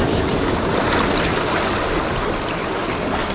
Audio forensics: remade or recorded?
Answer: recorded